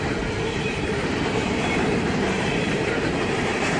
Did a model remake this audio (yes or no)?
yes